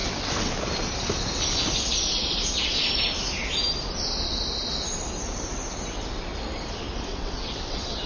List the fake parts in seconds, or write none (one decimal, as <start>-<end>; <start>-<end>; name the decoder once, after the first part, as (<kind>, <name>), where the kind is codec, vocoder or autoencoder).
0.0-0.5 (vocoder, WaveNeXt); 7.1-8.1